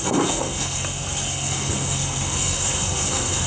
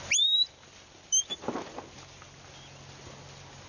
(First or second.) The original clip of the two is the second